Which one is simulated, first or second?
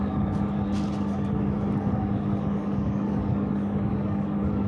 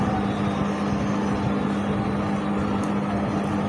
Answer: first